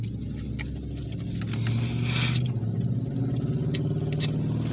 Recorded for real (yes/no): yes